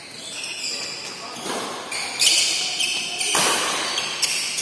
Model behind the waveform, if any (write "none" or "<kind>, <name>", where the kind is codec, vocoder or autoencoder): none